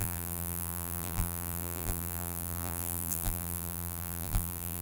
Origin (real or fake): fake